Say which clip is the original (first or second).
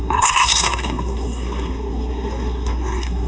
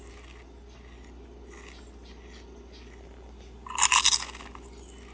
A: second